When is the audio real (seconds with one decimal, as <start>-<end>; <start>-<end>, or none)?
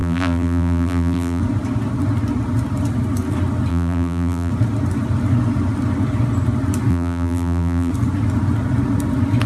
1.4-3.7; 4.5-6.9; 7.9-9.5